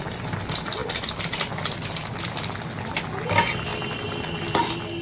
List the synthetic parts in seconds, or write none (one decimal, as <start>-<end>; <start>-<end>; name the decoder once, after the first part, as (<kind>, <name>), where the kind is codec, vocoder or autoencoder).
none